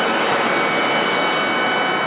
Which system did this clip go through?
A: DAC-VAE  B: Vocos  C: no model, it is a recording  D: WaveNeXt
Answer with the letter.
C